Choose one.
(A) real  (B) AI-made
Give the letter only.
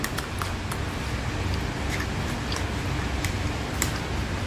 A